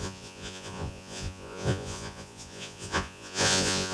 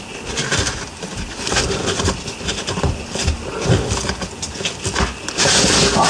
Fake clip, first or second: first